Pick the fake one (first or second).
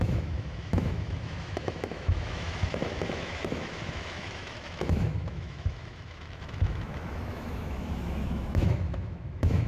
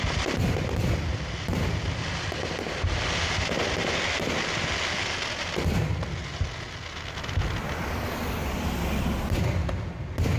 first